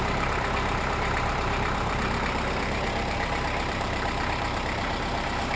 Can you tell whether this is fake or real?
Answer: fake